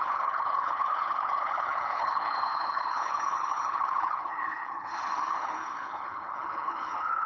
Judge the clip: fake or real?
fake